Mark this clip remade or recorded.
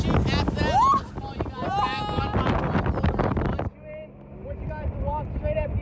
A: recorded